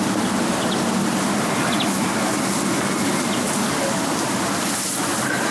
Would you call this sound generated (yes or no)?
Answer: no